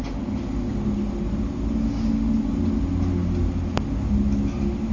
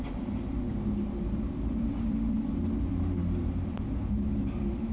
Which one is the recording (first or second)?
first